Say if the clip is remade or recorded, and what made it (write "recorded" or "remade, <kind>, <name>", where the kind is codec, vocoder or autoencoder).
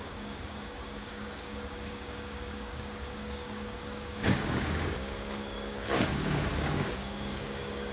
remade, codec, DAC